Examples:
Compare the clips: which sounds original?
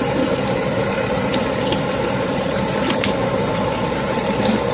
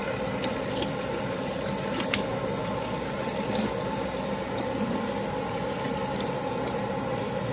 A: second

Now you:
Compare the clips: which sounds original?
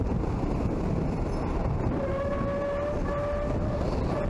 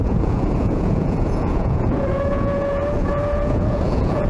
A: first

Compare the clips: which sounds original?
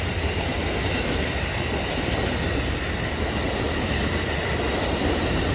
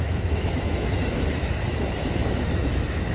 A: first